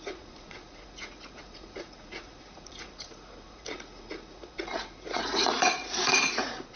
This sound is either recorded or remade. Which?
remade